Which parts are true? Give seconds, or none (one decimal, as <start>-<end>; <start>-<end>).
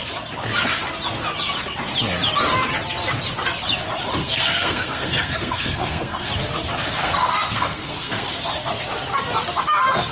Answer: 0.0-4.2; 6.3-7.0; 8.4-10.1